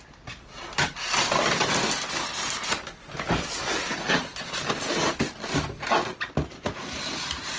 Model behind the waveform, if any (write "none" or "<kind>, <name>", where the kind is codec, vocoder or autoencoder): none